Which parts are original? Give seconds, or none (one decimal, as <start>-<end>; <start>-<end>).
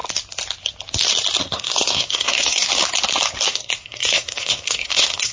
0.0-1.4; 2.7-3.5